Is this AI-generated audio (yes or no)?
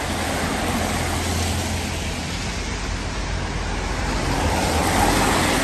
no